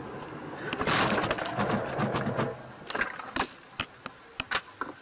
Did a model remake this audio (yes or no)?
no